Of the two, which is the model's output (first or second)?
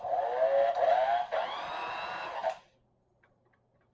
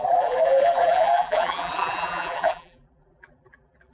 second